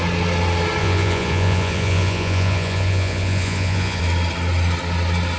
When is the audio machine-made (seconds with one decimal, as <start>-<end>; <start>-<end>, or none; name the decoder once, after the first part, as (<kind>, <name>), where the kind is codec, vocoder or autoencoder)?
0.8-4.0 (vocoder, Vocos)